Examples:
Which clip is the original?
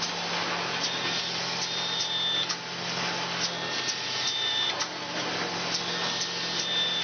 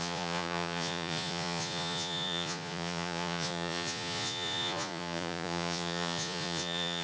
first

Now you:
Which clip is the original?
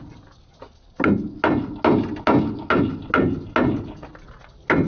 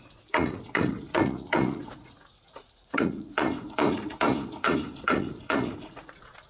first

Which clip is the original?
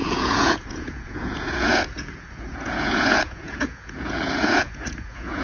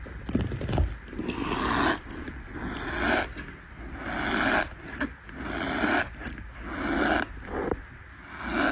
second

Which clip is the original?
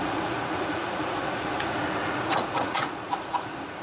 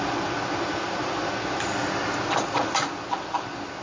second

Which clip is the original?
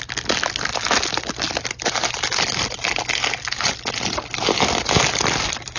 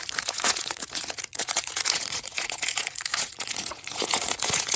first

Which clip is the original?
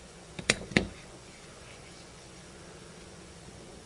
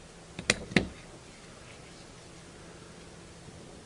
second